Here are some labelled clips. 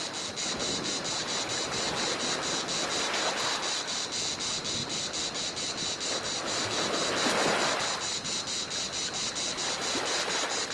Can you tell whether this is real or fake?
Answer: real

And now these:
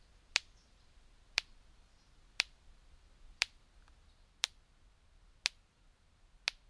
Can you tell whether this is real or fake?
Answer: real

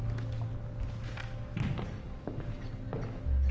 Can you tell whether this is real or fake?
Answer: real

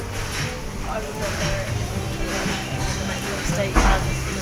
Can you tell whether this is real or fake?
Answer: real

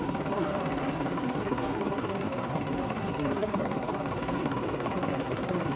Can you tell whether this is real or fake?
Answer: fake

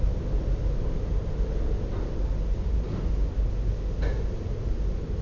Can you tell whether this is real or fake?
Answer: real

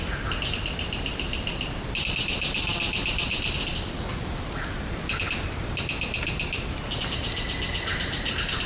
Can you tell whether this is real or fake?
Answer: real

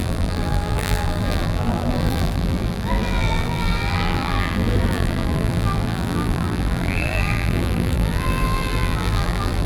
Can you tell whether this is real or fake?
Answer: fake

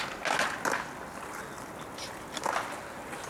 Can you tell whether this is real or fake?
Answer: real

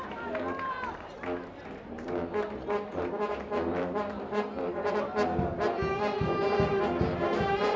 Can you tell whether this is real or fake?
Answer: real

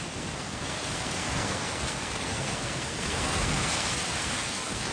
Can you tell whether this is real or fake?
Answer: fake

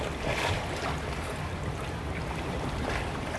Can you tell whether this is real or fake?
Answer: real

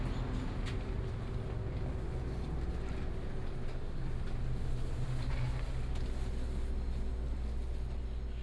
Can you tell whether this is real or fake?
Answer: real